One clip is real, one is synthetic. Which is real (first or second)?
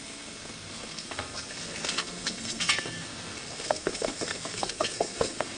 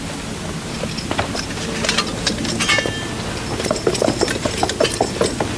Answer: second